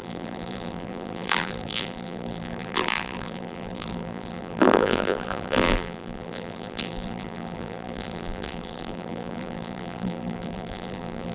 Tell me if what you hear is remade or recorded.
remade